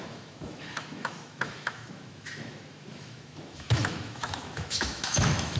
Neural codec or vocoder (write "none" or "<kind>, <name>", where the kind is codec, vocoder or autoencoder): autoencoder, DAC-VAE